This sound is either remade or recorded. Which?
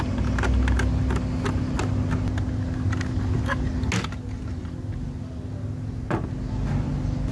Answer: recorded